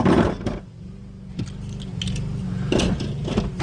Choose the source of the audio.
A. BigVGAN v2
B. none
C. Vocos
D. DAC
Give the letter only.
B